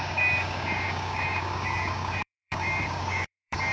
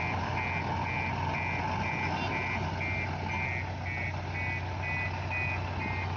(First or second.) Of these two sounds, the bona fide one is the second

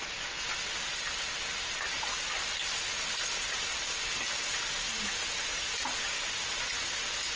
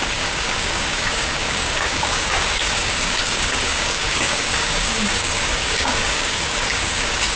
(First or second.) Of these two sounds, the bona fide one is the first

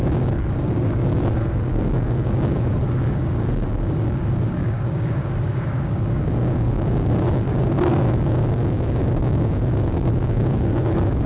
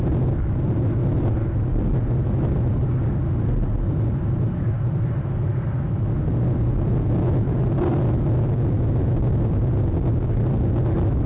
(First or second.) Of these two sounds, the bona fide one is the second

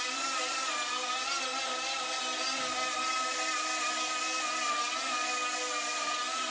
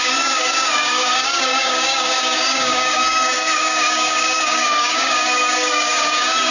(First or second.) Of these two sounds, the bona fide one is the first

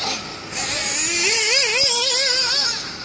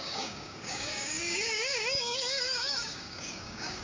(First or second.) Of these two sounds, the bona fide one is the first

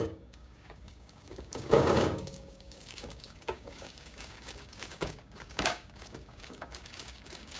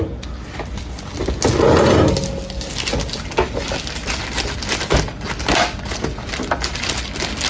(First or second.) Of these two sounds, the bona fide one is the second